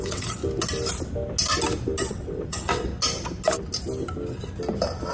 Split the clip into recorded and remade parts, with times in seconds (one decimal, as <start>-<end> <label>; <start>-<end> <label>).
0.0-0.4 remade; 0.4-2.1 recorded; 2.1-2.9 remade; 2.9-5.1 recorded